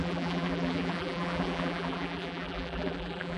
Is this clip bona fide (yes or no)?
no